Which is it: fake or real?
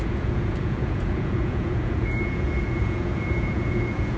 fake